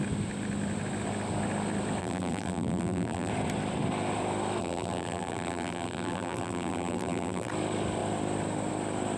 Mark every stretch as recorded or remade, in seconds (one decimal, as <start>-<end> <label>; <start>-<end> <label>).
0.0-2.0 recorded; 2.0-3.3 remade; 3.3-4.6 recorded; 4.6-7.5 remade; 7.5-9.2 recorded